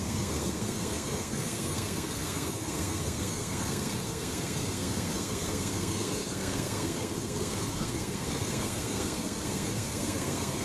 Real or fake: fake